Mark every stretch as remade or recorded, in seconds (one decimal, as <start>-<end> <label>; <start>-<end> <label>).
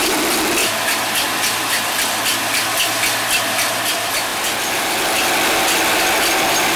0.0-0.6 recorded; 0.6-3.0 remade; 3.0-6.8 recorded